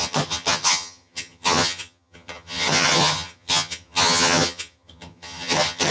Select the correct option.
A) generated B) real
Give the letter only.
A